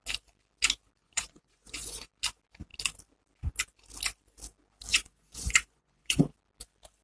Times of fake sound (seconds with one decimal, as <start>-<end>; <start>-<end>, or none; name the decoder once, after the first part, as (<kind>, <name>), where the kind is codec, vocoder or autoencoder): 1.0-2.1 (vocoder, Vocos); 4.9-6.2